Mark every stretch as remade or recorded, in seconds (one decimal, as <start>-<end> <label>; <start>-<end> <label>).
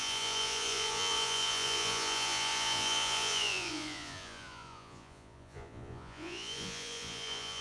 0.0-7.6 remade